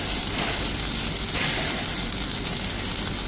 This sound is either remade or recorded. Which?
recorded